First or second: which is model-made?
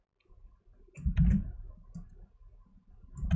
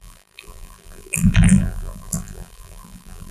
second